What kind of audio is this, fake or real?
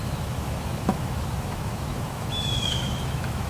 fake